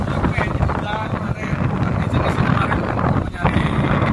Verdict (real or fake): real